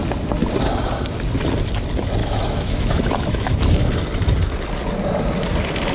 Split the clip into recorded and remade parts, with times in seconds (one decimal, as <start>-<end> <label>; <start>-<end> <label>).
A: 0.0-2.2 recorded; 2.2-3.5 remade; 3.5-5.9 recorded

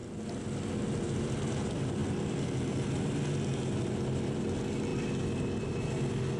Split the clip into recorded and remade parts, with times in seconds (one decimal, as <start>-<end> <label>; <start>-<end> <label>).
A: 0.0-6.4 recorded

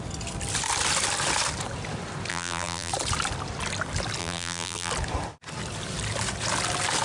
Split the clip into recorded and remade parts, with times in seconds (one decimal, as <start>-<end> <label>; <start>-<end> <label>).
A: 0.0-2.3 recorded; 2.3-2.9 remade; 2.9-4.2 recorded; 4.2-4.9 remade; 4.9-7.0 recorded

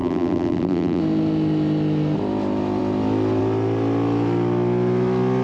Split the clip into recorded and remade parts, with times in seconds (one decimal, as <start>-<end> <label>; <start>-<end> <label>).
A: 0.0-1.0 remade; 1.0-5.4 recorded

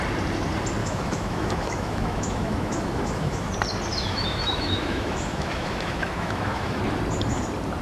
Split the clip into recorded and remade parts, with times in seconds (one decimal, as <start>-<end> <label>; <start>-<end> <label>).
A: 0.0-0.8 recorded; 0.8-3.5 remade; 3.5-3.9 recorded; 3.9-6.8 remade; 6.8-7.8 recorded